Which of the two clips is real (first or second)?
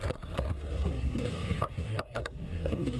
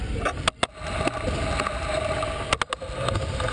second